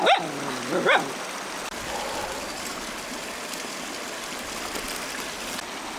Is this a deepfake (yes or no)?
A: no